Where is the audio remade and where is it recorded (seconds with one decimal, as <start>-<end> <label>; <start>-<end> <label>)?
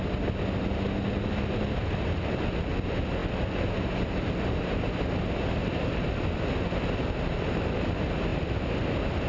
0.0-9.3 recorded